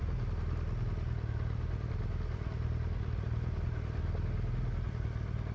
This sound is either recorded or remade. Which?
recorded